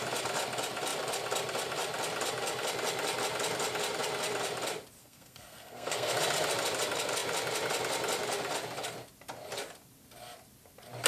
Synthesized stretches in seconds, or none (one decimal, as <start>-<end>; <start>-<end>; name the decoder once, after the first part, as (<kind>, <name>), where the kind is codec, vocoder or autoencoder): 5.0-6.1 (codec, SNAC)